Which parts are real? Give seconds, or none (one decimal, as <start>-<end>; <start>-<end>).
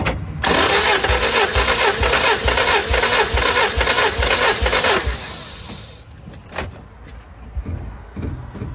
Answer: 0.0-8.7